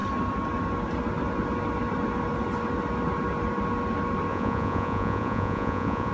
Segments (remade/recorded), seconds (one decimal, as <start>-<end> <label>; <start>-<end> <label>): 0.0-4.3 recorded; 4.3-6.1 remade